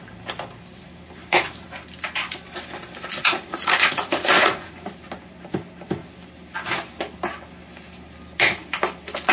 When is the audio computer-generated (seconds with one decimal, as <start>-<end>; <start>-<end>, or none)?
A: 3.2-4.9